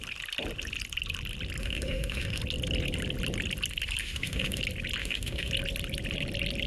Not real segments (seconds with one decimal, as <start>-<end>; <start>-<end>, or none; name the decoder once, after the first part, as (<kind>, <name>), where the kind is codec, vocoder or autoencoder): 1.6-2.4 (autoencoder, DAC-VAE); 4.0-4.6; 5.0-5.5